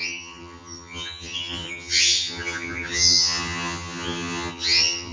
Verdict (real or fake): fake